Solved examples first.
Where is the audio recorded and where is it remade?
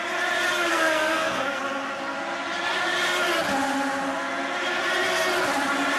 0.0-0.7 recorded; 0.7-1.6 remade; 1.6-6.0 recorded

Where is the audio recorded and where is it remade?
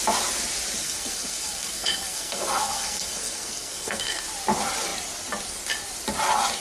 0.0-0.8 recorded; 0.8-4.2 remade; 4.2-6.6 recorded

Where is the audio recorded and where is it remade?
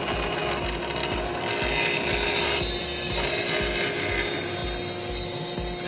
0.0-5.9 recorded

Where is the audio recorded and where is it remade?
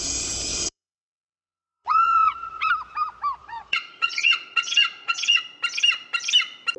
0.0-0.5 recorded; 0.5-2.7 remade; 2.7-3.4 recorded; 3.4-5.4 remade; 5.4-6.8 recorded